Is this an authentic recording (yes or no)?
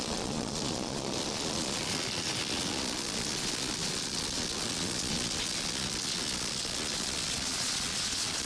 no